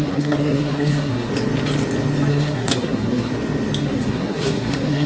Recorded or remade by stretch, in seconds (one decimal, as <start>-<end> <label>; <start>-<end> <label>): 0.0-1.3 remade; 1.3-2.3 recorded; 2.3-3.3 remade; 3.3-3.8 recorded; 3.8-5.1 remade